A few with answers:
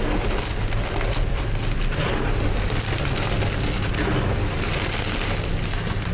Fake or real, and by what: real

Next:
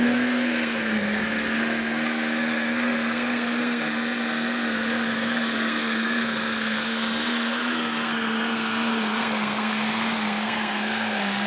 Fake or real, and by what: fake, codec, SNAC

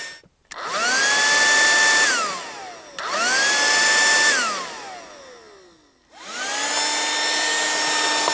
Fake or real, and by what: real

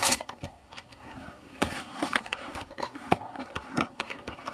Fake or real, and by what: fake, codec, SNAC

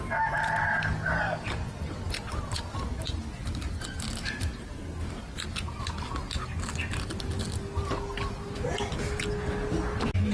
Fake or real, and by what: real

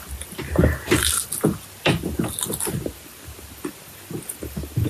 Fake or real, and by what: real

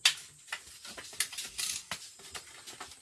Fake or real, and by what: real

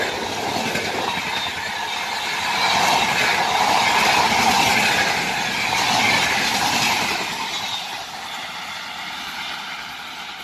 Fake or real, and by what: real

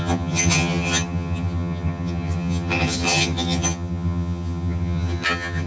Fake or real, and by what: fake, vocoder, HiFi-GAN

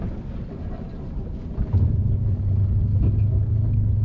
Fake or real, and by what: real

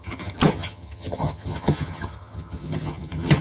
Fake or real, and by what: fake, vocoder, HiFi-GAN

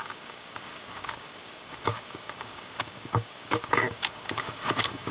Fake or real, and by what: fake, codec, DAC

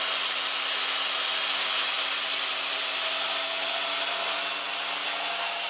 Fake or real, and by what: real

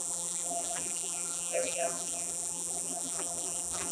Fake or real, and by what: fake, vocoder, BigVGAN v2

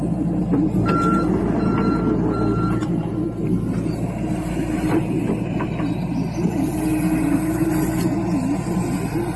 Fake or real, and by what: real